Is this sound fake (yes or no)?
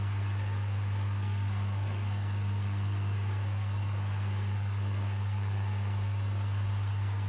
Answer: yes